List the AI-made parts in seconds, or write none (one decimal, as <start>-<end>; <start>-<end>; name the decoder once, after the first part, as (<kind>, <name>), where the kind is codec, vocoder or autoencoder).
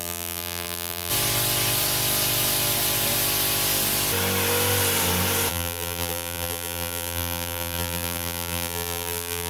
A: 0.0-1.1 (vocoder, BigVGAN v2); 5.5-9.5